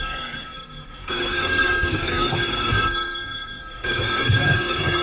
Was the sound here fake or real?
fake